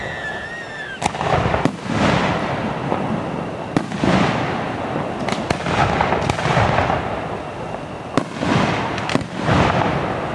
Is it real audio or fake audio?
real